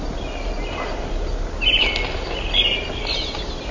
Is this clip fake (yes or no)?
no